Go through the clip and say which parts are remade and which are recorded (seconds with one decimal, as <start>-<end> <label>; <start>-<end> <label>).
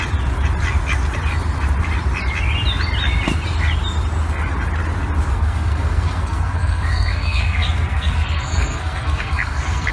0.0-5.3 recorded; 5.3-9.9 remade